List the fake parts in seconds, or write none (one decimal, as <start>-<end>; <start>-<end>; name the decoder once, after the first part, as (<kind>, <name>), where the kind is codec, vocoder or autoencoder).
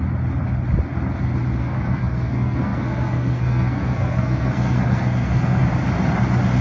1.6-5.6 (codec, SNAC)